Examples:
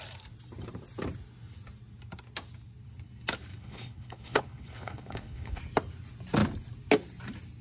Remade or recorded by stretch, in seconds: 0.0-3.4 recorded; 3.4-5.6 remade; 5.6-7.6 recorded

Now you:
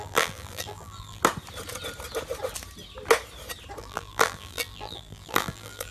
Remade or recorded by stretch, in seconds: 0.0-1.2 remade; 1.2-3.8 recorded; 3.8-5.9 remade

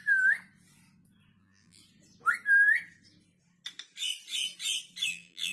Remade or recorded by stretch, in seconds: 0.0-1.4 recorded; 1.4-1.8 remade; 1.8-5.1 recorded; 5.1-5.5 remade

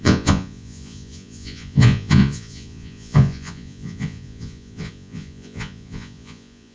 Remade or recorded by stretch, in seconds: 0.0-6.7 remade

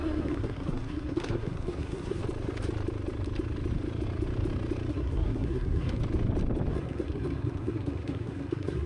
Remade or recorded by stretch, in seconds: 0.0-2.2 remade; 2.2-4.9 recorded; 4.9-6.0 remade; 6.0-6.7 recorded; 6.7-8.9 remade

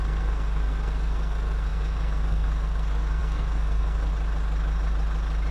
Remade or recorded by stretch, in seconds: 0.0-4.1 remade; 4.1-5.5 recorded

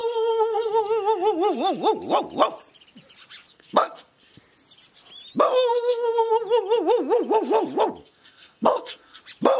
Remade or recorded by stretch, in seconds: 0.0-0.7 remade; 0.7-3.5 recorded; 3.5-4.4 remade; 4.4-5.7 recorded; 5.7-6.3 remade; 6.3-8.0 recorded; 8.0-9.2 remade; 9.2-9.6 recorded